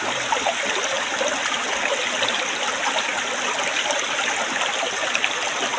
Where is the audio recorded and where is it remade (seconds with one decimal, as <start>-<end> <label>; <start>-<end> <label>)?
0.0-5.8 recorded

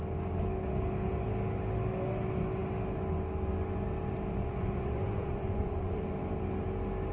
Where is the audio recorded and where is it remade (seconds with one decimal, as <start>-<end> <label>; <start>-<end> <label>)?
0.0-4.4 recorded; 4.4-6.0 remade; 6.0-7.1 recorded

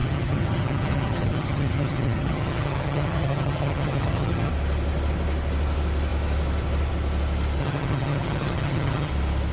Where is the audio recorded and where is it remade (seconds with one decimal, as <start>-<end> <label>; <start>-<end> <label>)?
0.0-4.5 remade; 4.5-7.6 recorded; 7.6-9.1 remade; 9.1-9.5 recorded